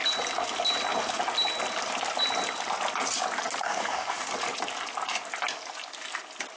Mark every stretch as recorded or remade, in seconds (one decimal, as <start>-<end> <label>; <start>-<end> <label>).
0.0-3.6 recorded; 3.6-4.3 remade; 4.3-6.6 recorded